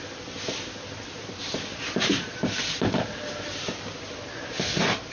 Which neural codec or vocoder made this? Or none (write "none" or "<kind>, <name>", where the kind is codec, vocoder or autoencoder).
none